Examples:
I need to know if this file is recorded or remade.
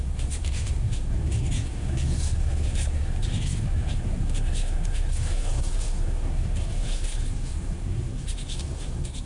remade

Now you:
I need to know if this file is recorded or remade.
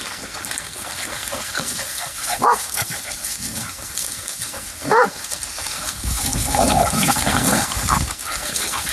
remade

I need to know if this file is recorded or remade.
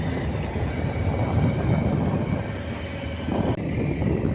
recorded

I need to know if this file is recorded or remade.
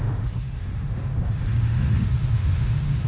remade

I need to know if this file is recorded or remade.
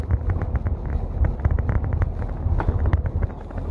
recorded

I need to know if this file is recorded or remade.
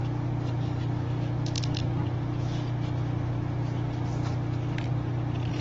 recorded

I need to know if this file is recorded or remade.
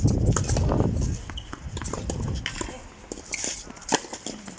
recorded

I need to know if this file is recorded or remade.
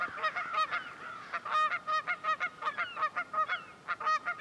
recorded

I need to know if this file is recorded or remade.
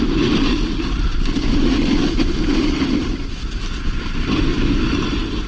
recorded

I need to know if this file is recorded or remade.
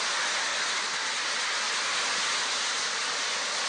recorded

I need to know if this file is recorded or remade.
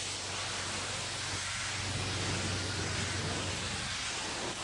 recorded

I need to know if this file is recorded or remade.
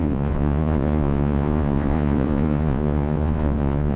remade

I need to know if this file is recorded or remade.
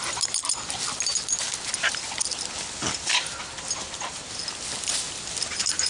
recorded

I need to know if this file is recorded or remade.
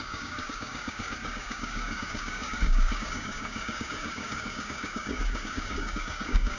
remade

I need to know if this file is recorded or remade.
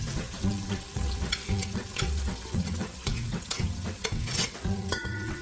remade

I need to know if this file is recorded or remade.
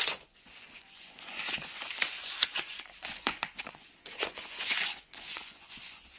remade